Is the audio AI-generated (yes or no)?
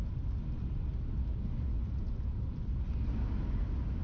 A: no